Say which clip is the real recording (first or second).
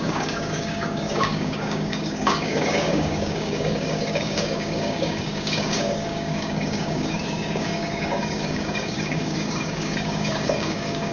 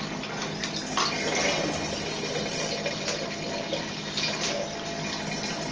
second